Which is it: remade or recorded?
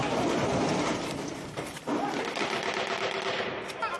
recorded